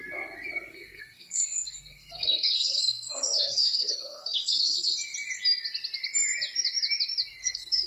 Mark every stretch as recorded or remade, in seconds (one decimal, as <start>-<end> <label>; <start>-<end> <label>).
0.0-0.7 recorded; 0.7-4.9 remade; 4.9-7.4 recorded; 7.4-7.9 remade